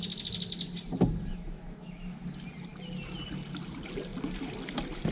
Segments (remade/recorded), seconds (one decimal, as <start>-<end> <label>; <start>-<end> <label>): 0.0-1.3 recorded; 1.3-2.2 remade; 2.2-5.1 recorded